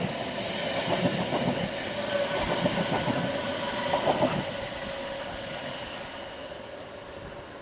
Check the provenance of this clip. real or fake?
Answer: real